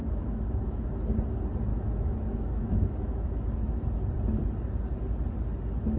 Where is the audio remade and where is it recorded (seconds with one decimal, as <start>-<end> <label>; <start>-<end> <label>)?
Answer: 0.0-0.6 remade; 0.6-1.7 recorded; 1.7-3.9 remade; 3.9-6.0 recorded